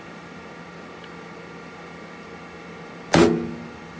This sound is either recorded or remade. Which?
recorded